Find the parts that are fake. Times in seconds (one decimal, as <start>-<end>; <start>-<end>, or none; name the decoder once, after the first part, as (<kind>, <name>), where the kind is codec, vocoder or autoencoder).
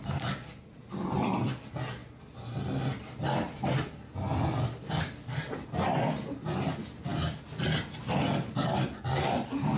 none